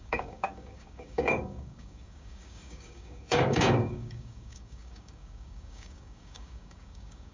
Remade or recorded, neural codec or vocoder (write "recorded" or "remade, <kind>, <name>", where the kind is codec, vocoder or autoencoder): remade, codec, DAC